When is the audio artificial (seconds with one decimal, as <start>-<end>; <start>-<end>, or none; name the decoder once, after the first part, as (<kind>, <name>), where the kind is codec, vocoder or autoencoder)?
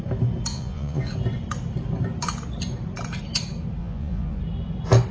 0.5-1.1 (vocoder, Vocos); 3.8-4.4